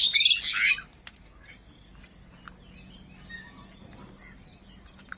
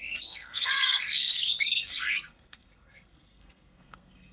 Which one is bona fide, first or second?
first